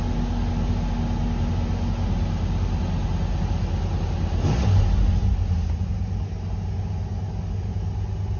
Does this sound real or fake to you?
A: real